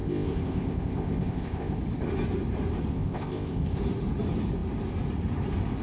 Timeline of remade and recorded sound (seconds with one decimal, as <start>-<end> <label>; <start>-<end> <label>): 0.0-1.8 remade; 1.8-2.9 recorded; 2.9-3.8 remade; 3.8-5.8 recorded